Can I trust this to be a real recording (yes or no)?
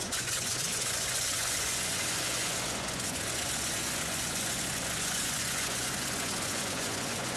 no